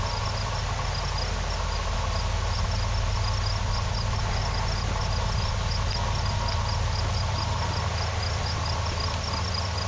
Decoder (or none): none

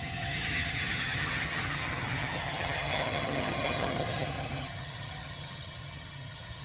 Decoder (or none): vocoder, HiFi-GAN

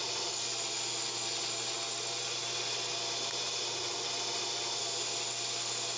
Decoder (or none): none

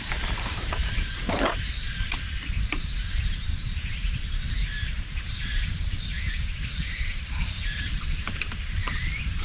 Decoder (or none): vocoder, BigVGAN v2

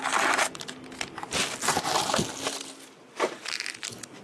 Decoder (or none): none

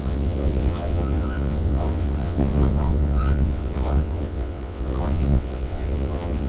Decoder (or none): vocoder, WaveNeXt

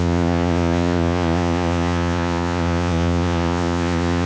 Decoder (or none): vocoder, Vocos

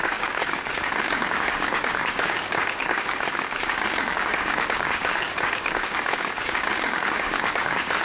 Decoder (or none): codec, DAC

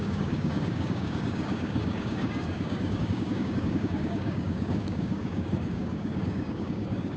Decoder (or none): codec, DAC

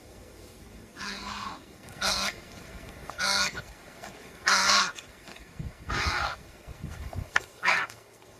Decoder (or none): codec, SNAC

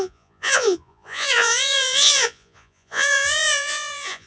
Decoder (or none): vocoder, Vocos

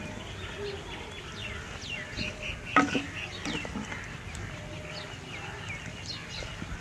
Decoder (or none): none